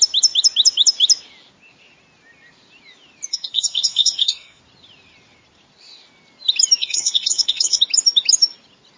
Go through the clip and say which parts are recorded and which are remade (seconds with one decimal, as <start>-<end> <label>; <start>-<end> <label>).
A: 0.0-3.3 recorded; 3.3-4.6 remade; 4.6-6.8 recorded; 6.8-7.8 remade; 7.8-9.0 recorded